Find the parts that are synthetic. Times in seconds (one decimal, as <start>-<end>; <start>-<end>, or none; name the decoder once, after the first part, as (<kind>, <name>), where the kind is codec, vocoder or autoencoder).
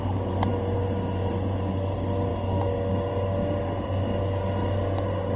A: none